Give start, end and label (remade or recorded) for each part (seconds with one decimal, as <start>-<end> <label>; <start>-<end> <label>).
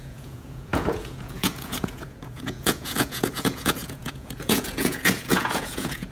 0.0-6.1 remade